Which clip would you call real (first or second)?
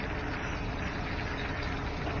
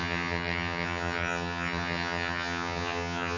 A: first